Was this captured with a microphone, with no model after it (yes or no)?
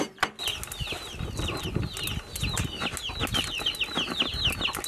yes